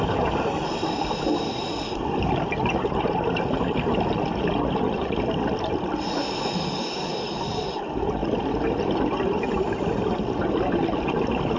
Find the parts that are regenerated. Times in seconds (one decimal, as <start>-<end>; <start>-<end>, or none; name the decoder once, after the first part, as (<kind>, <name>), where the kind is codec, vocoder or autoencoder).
none